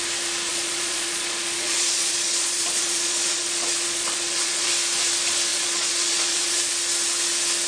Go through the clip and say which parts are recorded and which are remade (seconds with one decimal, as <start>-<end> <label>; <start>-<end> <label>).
0.0-0.5 recorded; 0.5-4.7 remade; 4.7-5.5 recorded; 5.5-6.7 remade; 6.7-7.7 recorded